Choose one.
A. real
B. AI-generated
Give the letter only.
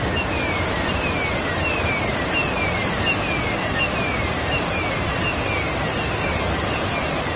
A